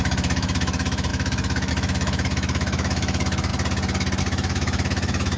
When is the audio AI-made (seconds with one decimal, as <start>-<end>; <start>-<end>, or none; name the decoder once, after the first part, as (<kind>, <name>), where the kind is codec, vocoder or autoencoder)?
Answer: 0.0-3.5 (autoencoder, DAC-VAE); 4.2-5.4